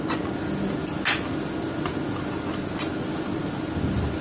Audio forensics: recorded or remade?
recorded